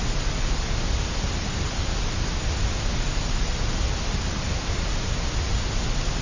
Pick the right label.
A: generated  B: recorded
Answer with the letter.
B